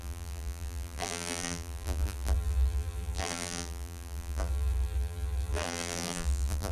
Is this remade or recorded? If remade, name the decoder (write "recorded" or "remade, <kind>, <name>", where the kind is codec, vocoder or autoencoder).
remade, vocoder, BigVGAN v2